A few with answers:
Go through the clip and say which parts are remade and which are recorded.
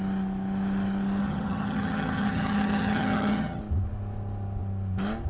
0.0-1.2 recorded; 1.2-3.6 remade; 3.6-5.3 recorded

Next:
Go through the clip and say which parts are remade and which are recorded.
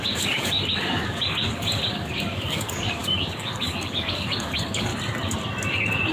0.0-4.9 remade; 4.9-6.1 recorded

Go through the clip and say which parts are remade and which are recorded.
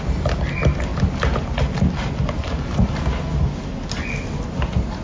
0.0-5.0 recorded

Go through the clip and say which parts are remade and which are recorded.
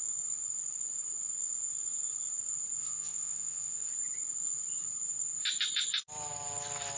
0.0-2.8 recorded; 2.8-3.9 remade; 3.9-7.0 recorded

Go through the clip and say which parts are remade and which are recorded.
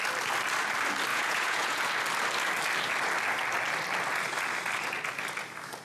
0.0-1.1 recorded; 1.1-1.8 remade; 1.8-5.8 recorded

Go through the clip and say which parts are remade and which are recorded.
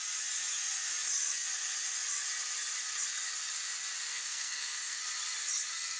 0.0-4.1 recorded; 4.1-5.0 remade; 5.0-6.0 recorded